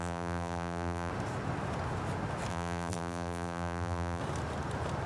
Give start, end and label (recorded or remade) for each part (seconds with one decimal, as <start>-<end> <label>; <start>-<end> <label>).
0.0-1.1 remade; 1.1-2.5 recorded; 2.5-4.2 remade; 4.2-5.1 recorded